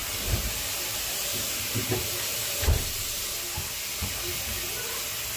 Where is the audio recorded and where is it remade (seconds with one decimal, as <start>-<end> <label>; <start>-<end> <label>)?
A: 0.0-2.7 remade; 2.7-5.4 recorded